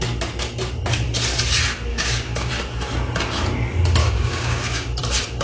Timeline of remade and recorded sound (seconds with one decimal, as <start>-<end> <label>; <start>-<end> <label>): 0.0-1.9 recorded; 1.9-2.5 remade; 2.5-4.0 recorded; 4.0-5.0 remade; 5.0-5.4 recorded